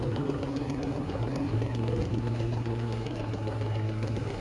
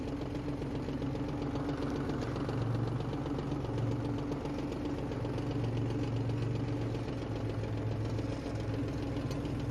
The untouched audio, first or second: second